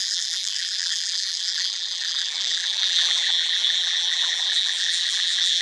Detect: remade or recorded remade